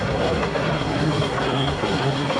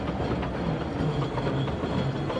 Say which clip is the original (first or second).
second